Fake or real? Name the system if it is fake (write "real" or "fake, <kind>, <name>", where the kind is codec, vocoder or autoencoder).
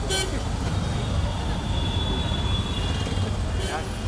real